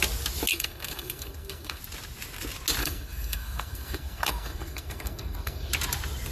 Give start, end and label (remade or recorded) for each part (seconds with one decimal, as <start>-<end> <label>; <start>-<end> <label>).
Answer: 0.0-0.5 recorded; 0.5-1.8 remade; 1.8-2.8 recorded; 2.8-5.7 remade; 5.7-6.3 recorded